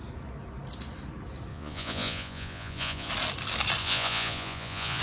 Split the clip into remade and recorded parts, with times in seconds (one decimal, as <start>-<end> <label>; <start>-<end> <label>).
0.0-1.5 recorded; 1.5-3.1 remade; 3.1-3.8 recorded; 3.8-5.0 remade